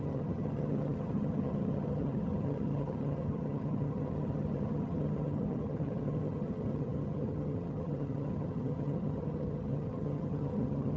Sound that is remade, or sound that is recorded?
remade